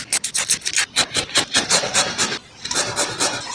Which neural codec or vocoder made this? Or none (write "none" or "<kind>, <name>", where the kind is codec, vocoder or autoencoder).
none